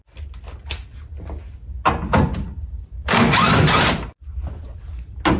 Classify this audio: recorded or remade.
recorded